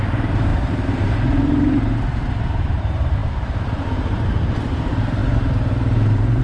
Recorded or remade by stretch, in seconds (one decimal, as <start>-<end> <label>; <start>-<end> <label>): 0.0-6.4 remade